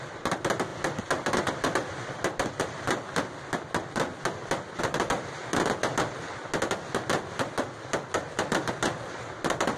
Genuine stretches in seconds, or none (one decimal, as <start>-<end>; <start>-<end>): 0.0-9.8